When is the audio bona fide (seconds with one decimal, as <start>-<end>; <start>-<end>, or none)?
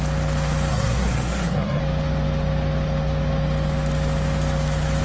0.0-0.7; 1.8-5.0